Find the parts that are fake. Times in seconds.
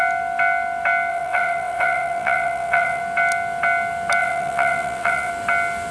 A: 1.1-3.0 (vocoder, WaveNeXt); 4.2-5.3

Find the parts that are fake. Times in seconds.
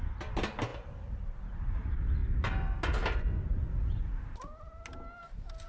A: none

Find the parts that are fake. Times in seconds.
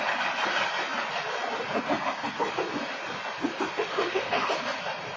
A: 3.9-4.5 (autoencoder, DAC-VAE)